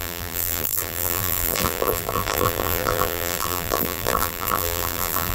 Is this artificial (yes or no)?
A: yes